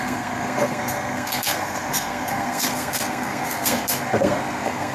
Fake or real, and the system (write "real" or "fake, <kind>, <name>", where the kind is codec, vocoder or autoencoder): fake, codec, SNAC